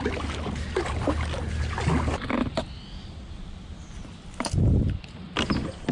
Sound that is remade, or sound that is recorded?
recorded